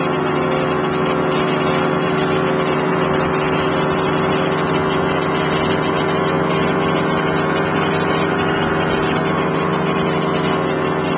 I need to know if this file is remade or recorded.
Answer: recorded